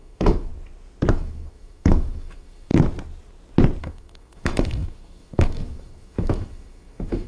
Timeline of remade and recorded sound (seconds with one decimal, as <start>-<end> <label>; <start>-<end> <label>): 0.0-0.5 remade; 0.5-1.1 recorded; 1.1-2.7 remade; 2.7-3.8 recorded; 3.8-7.3 remade